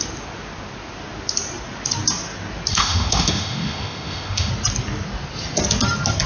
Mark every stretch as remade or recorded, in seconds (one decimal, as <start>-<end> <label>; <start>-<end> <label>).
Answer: 0.0-2.7 recorded; 2.7-4.5 remade; 4.5-6.3 recorded